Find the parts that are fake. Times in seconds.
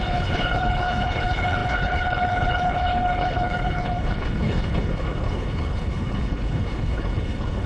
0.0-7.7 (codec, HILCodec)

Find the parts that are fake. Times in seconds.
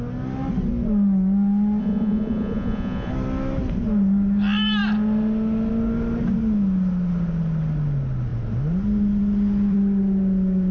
1.8-3.1 (vocoder, Vocos)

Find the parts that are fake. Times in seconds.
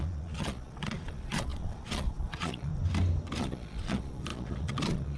0.0-2.7 (vocoder, Vocos); 3.4-5.2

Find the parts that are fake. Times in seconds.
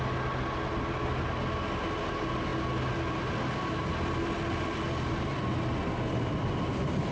none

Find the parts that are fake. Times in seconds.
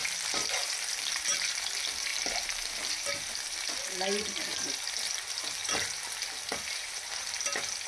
none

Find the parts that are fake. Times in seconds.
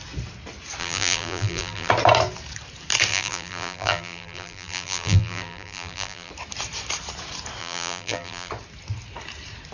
0.8-1.9 (vocoder, BigVGAN v2); 3.1-6.3; 7.6-8.5